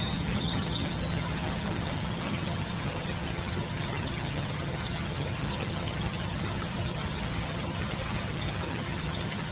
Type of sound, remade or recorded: remade